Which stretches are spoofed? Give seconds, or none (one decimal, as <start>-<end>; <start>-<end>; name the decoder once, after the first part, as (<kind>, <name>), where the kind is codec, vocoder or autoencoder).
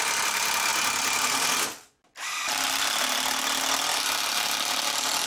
none